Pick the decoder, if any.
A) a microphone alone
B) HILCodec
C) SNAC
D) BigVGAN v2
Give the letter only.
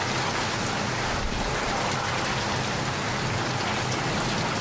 A